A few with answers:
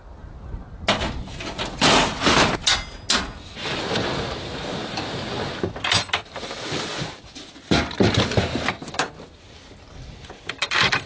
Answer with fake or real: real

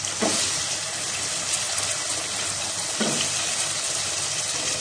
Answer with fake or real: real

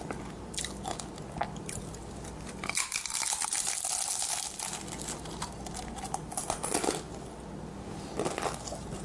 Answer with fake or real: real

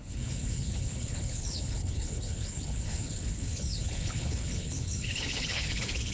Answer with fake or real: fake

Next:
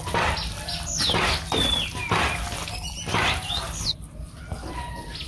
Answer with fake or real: real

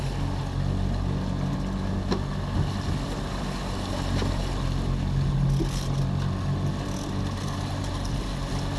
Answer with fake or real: real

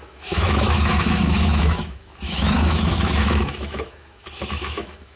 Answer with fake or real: fake